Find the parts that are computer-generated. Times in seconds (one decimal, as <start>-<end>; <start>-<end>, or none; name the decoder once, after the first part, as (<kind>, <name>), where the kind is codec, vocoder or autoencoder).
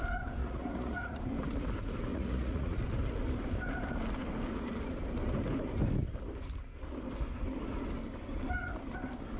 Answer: 0.4-1.2 (vocoder, Vocos); 2.1-2.8